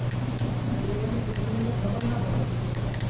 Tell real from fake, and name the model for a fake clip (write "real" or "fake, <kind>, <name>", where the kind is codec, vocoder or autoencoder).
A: fake, vocoder, BigVGAN v2